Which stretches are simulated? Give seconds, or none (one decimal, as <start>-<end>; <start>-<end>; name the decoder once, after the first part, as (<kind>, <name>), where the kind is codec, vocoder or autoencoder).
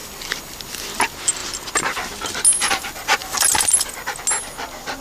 0.0-0.6 (vocoder, BigVGAN v2); 3.2-4.0